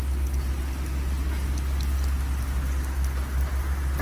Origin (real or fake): real